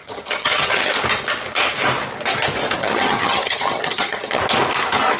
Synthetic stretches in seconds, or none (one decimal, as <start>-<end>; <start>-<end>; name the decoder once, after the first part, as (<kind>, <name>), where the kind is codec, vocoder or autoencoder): 0.0-0.9 (vocoder, HiFi-GAN); 2.8-4.4